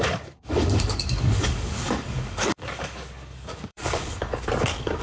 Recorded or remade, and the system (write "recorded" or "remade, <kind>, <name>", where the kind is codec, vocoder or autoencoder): remade, codec, DAC